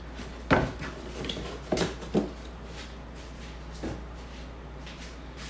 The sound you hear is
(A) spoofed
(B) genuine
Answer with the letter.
B